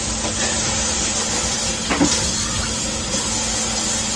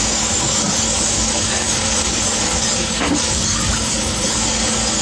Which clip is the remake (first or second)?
second